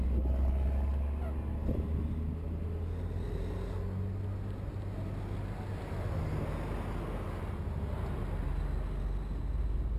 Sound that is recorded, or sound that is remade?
recorded